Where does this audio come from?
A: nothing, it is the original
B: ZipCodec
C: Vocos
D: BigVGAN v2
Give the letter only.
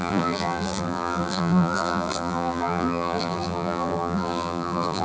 D